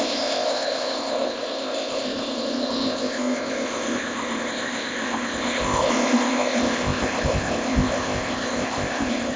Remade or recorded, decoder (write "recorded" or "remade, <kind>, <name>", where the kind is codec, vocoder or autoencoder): remade, codec, ZipCodec